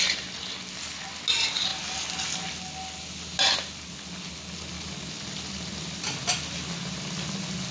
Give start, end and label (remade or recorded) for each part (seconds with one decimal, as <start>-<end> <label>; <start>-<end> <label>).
0.0-7.7 recorded